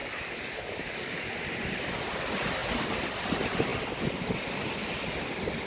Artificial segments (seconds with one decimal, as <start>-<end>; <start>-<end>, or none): 0.0-1.2